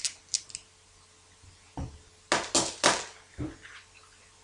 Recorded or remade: recorded